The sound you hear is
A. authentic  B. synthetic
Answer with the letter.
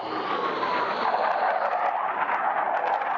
A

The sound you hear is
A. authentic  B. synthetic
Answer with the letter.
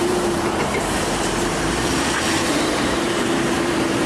B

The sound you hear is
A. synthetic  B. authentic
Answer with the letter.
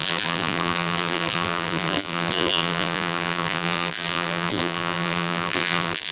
A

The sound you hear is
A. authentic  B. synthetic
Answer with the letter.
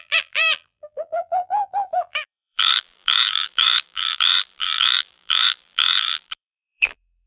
B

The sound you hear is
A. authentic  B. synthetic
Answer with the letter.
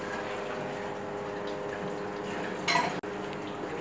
A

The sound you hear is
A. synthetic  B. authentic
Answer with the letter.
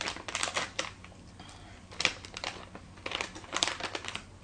A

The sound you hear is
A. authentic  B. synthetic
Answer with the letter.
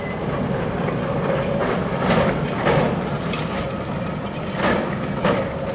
A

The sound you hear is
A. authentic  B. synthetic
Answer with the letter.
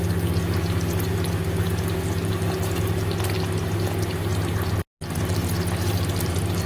A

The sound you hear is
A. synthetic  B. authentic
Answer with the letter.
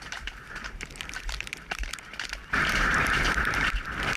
A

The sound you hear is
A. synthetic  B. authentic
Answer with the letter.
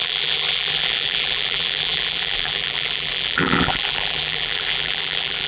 A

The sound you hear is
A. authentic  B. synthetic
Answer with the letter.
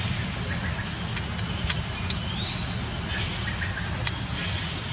A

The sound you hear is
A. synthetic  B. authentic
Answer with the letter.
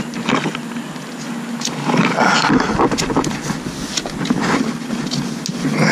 B